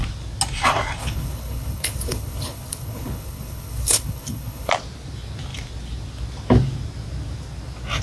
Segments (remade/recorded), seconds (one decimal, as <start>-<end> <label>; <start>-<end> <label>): 0.0-1.0 recorded; 1.0-4.7 remade; 4.7-8.0 recorded